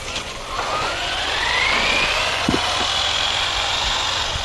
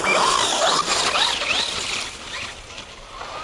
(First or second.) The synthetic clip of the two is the first